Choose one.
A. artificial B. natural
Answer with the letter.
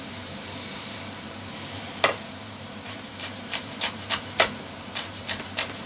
A